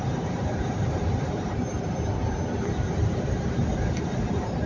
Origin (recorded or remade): remade